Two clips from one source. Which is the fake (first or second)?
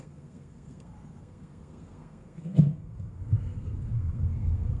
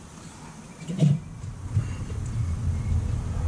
first